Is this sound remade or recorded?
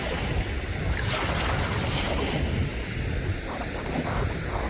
recorded